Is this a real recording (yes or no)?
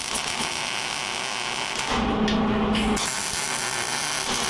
yes